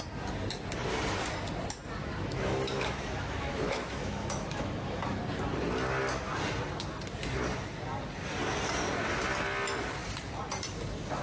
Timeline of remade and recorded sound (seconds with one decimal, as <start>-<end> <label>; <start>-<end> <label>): 0.0-2.0 recorded; 2.0-5.2 remade; 5.2-11.2 recorded